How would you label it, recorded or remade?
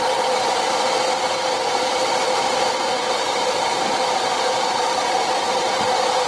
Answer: recorded